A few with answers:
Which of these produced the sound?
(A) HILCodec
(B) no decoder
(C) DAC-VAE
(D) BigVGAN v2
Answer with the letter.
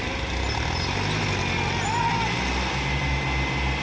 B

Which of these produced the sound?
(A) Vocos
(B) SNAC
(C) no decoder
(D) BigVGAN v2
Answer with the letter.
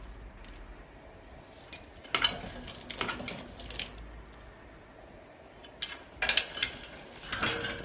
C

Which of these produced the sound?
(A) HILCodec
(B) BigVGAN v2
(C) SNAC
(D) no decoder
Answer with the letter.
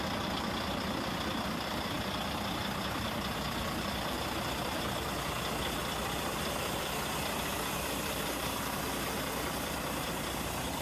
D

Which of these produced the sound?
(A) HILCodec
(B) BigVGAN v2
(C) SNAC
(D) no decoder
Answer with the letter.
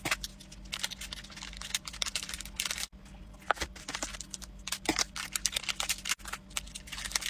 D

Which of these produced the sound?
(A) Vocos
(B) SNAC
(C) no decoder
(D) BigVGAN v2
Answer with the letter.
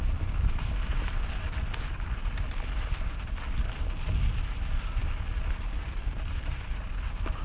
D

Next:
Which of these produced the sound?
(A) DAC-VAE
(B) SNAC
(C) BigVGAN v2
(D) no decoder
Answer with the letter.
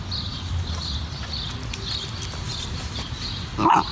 D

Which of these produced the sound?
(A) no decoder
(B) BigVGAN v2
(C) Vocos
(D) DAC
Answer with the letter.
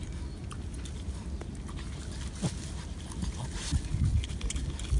A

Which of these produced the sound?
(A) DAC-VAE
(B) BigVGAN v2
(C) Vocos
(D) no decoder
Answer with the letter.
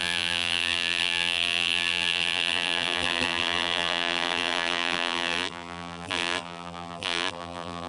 B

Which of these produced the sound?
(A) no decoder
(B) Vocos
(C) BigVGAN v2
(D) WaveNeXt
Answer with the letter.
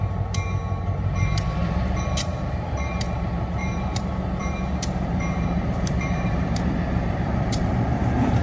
C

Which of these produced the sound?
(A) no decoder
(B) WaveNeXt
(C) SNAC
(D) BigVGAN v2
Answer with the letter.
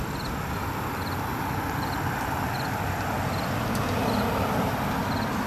A